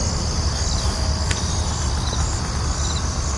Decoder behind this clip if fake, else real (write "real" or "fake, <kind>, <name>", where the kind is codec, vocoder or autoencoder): real